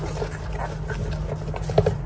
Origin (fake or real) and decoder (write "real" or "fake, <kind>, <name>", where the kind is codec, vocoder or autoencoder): real